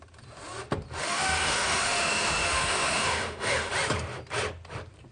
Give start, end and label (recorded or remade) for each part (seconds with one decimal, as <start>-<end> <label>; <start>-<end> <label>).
0.0-1.0 recorded; 1.0-3.7 remade; 3.7-5.1 recorded